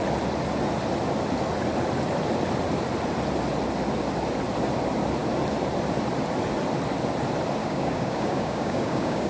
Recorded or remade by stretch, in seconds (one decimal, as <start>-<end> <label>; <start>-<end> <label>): 0.0-7.6 recorded; 7.6-9.3 remade